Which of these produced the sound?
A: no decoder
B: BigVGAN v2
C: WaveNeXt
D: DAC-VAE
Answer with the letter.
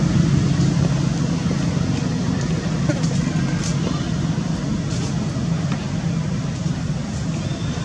A